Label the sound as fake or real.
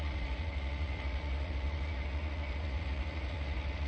fake